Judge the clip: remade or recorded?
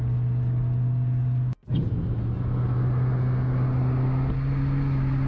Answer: recorded